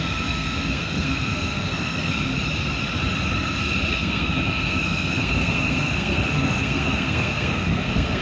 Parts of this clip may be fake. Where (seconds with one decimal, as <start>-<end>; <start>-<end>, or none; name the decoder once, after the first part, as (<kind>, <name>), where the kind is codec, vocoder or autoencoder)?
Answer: 0.0-2.3 (codec, SNAC); 3.9-8.2